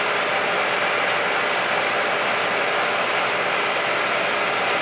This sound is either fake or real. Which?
real